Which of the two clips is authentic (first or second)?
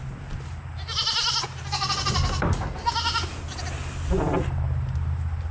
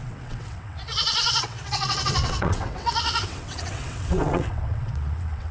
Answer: first